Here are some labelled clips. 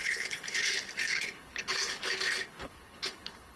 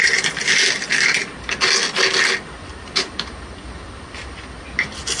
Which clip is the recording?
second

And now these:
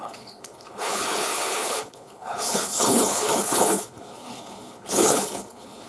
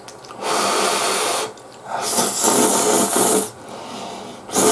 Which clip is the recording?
second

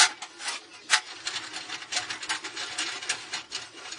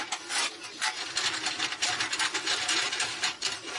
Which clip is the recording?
first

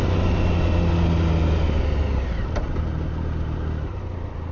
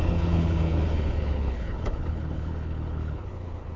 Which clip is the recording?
first